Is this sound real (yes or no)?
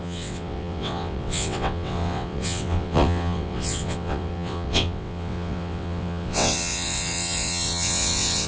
no